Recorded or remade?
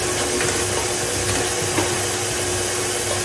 recorded